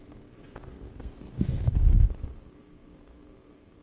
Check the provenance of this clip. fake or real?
fake